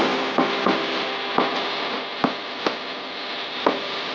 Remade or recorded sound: recorded